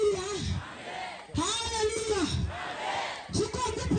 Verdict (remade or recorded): recorded